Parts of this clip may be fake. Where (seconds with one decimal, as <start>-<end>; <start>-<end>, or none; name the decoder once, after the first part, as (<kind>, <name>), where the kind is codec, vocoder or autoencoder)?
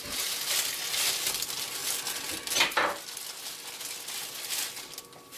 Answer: none